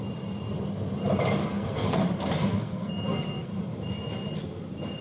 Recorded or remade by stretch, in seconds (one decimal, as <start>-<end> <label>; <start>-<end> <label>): 0.0-1.4 recorded; 1.4-2.0 remade; 2.0-2.5 recorded; 2.5-3.5 remade; 3.5-5.0 recorded